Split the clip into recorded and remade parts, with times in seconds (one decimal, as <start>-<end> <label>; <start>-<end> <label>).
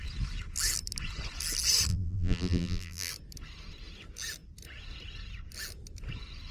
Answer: 0.0-1.9 recorded; 1.9-3.1 remade; 3.1-6.5 recorded